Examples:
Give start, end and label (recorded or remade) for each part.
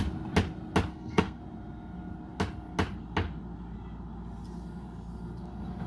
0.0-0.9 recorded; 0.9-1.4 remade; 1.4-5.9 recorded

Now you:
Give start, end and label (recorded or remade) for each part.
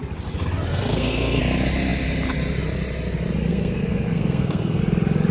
0.0-0.7 recorded; 0.7-1.4 remade; 1.4-3.5 recorded; 3.5-4.8 remade; 4.8-5.3 recorded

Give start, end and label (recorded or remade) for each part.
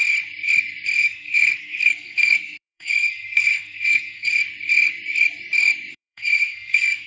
0.0-1.0 recorded; 1.0-4.3 remade; 4.3-5.9 recorded; 5.9-7.1 remade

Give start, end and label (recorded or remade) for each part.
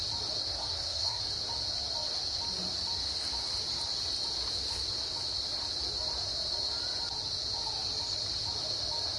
0.0-0.4 recorded; 0.4-1.2 remade; 1.2-9.2 recorded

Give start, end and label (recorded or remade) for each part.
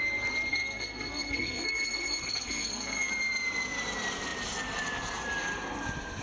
0.0-0.5 recorded; 0.5-3.1 remade; 3.1-6.2 recorded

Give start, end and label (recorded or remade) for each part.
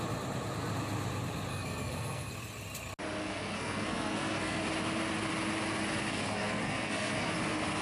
0.0-1.5 recorded; 1.5-2.3 remade; 2.3-3.2 recorded; 3.2-4.6 remade; 4.6-6.1 recorded; 6.1-7.3 remade; 7.3-7.8 recorded